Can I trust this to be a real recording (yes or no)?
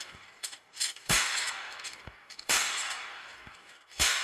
no